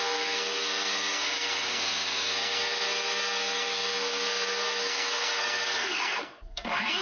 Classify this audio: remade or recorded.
remade